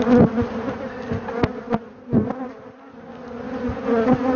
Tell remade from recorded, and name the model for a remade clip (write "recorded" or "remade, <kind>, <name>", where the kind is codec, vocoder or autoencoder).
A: recorded